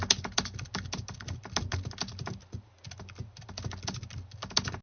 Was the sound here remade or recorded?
recorded